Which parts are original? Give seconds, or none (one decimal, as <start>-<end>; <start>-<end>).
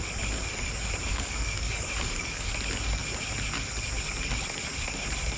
0.0-1.1; 2.5-5.4